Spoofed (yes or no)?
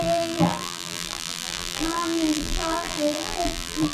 yes